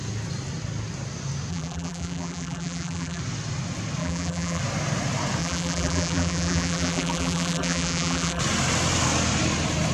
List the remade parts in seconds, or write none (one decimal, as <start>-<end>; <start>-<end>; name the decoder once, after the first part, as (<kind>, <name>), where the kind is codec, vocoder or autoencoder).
1.5-3.2 (vocoder, BigVGAN v2); 4.0-4.6; 5.4-8.4